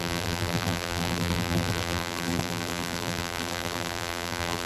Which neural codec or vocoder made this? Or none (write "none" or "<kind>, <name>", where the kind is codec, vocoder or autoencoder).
vocoder, BigVGAN v2